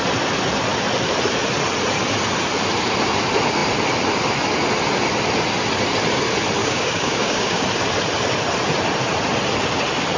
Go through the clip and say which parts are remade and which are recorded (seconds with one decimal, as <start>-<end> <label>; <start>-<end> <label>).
0.0-6.6 recorded; 6.6-7.6 remade; 7.6-10.2 recorded